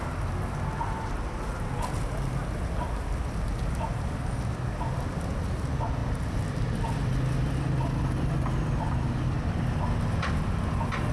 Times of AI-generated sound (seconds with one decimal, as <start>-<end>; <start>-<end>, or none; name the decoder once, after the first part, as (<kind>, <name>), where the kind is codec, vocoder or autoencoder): none